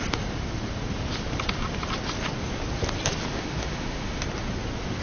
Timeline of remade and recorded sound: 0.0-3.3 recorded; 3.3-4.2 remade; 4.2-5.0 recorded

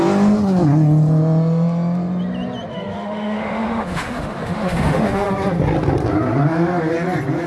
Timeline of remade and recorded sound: 0.0-2.7 recorded; 2.7-5.3 remade; 5.3-7.5 recorded

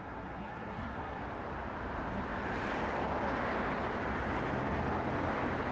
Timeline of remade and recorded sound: 0.0-1.2 remade; 1.2-5.7 recorded

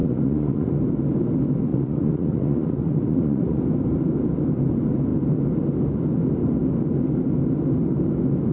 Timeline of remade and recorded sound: 0.0-0.8 remade; 0.8-1.7 recorded; 1.7-3.6 remade; 3.6-8.5 recorded